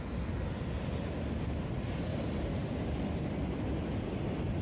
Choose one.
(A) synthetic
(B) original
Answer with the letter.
B